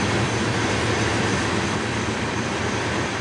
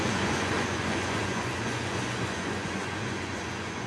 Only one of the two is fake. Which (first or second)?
second